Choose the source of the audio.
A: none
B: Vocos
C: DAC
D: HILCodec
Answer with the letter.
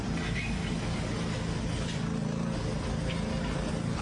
A